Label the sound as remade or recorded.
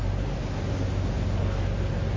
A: recorded